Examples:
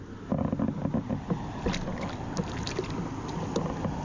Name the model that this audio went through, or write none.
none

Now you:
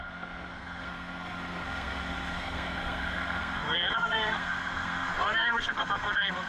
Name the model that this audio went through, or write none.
codec, SNAC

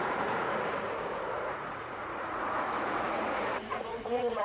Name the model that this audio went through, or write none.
vocoder, Vocos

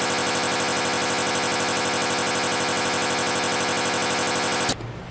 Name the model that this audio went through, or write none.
none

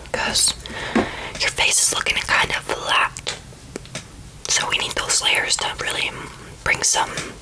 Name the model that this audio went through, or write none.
none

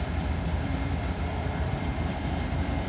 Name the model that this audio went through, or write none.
vocoder, BigVGAN v2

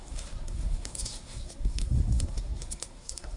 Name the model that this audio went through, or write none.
codec, SNAC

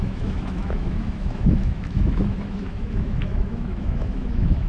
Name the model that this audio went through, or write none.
autoencoder, DAC-VAE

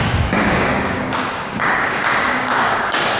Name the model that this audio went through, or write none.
codec, DAC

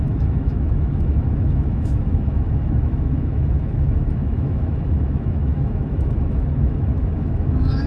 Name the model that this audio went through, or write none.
autoencoder, DAC-VAE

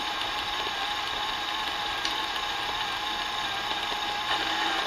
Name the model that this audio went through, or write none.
none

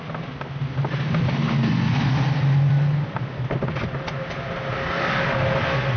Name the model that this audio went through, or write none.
none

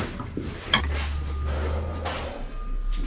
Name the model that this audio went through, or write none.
none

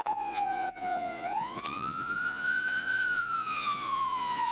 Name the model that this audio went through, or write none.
vocoder, Vocos